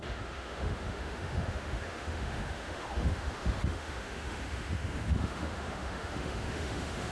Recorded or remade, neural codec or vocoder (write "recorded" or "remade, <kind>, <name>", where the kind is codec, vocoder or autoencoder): remade, autoencoder, DAC-VAE